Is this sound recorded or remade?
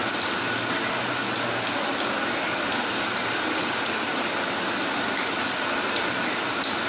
recorded